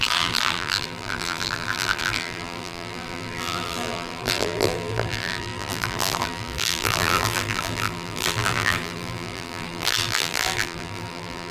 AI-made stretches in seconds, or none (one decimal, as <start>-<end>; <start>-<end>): 0.0-11.5